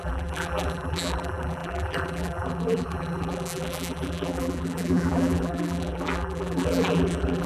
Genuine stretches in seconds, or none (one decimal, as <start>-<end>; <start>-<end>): none